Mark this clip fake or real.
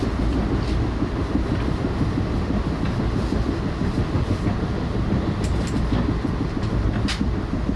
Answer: real